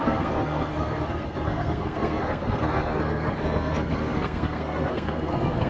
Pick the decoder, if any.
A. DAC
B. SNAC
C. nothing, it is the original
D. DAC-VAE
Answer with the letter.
B